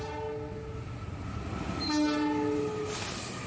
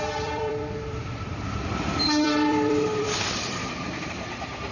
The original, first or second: first